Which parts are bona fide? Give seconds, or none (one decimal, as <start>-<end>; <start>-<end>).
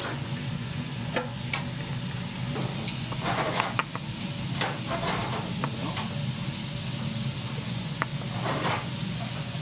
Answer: 1.3-2.9; 3.8-7.6; 8.1-9.0